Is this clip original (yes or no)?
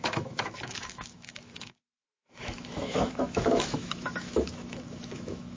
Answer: no